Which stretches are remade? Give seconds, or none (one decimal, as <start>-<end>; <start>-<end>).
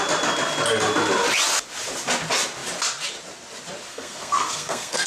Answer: 3.9-5.1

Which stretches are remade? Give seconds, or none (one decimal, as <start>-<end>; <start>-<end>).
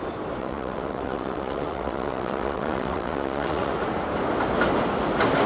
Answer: 0.4-3.7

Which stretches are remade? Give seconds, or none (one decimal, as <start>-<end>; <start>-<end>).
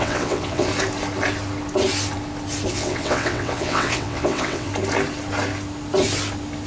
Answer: 0.0-0.7; 2.7-4.7